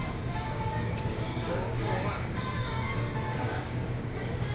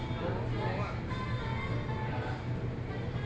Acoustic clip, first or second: second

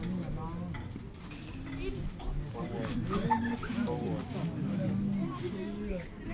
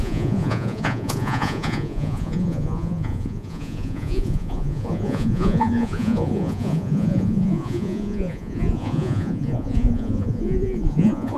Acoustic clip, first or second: first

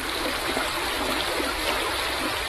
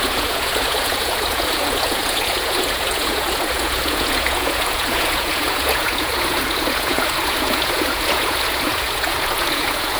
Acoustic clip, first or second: first